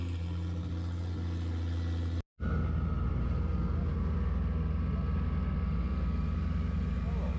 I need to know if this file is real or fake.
real